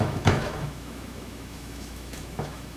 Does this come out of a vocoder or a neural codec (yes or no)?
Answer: yes